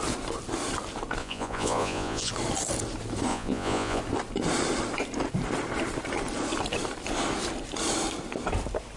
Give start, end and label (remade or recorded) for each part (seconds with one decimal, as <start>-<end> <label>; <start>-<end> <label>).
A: 0.0-1.2 recorded; 1.2-2.3 remade; 2.3-3.3 recorded; 3.3-4.0 remade; 4.0-9.0 recorded